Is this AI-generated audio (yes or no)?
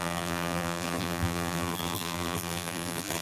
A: yes